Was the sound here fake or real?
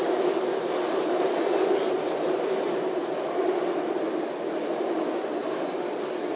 real